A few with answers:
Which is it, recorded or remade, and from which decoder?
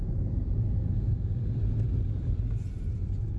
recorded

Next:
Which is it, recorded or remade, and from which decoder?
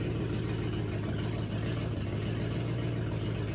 recorded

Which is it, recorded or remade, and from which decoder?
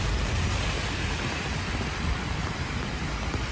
remade, vocoder, BigVGAN v2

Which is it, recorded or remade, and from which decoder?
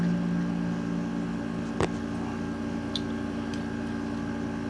recorded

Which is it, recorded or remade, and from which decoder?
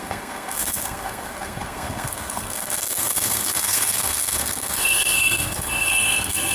remade, codec, SNAC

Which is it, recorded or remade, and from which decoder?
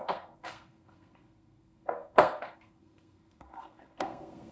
remade, codec, SNAC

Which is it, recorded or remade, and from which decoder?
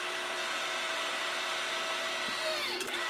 remade, vocoder, BigVGAN v2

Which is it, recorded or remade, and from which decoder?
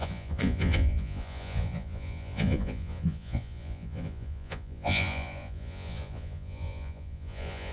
remade, vocoder, Vocos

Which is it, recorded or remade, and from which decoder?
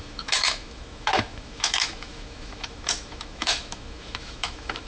remade, autoencoder, DAC-VAE